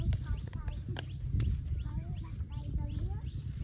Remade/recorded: recorded